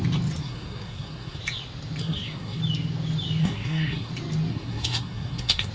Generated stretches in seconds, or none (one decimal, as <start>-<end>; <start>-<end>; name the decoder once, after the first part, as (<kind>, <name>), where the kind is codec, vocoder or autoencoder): 0.4-1.4 (codec, SNAC); 2.0-2.6; 3.4-4.1; 4.5-5.7